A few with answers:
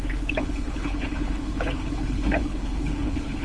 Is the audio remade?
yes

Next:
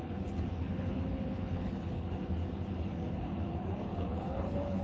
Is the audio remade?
yes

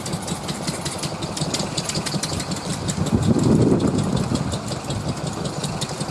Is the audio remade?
no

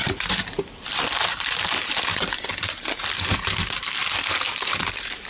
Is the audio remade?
no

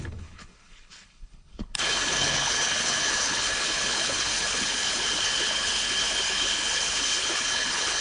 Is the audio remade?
yes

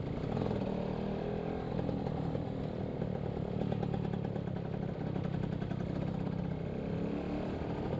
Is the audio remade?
no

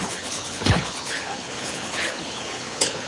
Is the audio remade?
yes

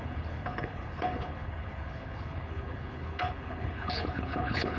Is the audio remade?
yes